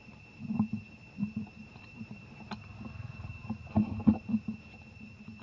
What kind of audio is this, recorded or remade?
remade